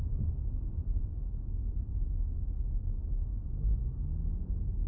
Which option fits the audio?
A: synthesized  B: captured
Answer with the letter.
B